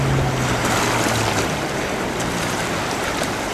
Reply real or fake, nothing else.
real